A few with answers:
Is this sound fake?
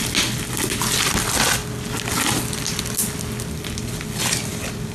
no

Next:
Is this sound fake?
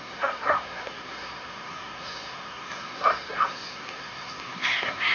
yes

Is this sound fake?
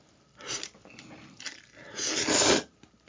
no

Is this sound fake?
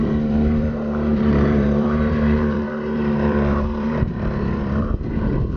yes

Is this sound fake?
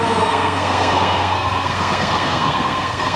yes